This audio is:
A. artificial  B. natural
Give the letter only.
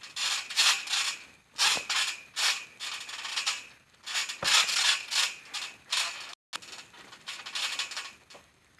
B